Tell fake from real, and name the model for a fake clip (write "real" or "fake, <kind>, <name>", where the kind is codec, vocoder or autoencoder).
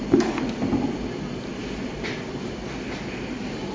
fake, vocoder, BigVGAN v2